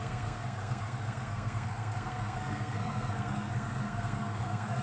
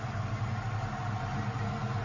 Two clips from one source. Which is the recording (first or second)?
second